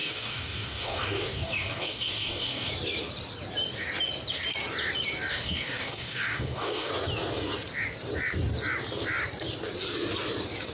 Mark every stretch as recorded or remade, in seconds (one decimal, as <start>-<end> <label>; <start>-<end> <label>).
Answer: 0.0-2.7 remade; 2.7-5.3 recorded; 5.3-6.9 remade; 6.9-10.7 recorded